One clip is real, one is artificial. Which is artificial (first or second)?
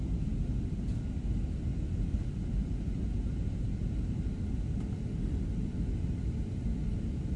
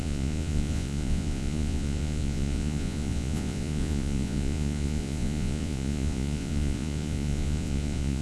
second